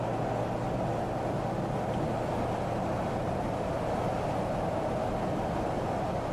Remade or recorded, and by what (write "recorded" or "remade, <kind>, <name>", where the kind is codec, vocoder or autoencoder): recorded